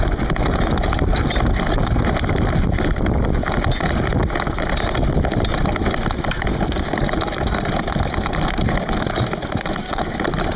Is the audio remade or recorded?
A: recorded